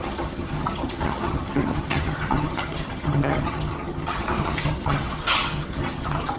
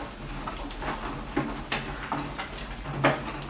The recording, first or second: second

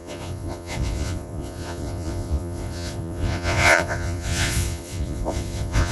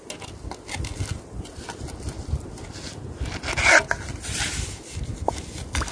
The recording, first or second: second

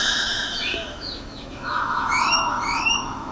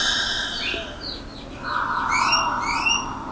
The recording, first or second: second